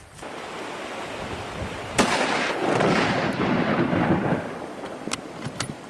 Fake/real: real